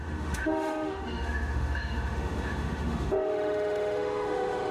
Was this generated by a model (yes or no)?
yes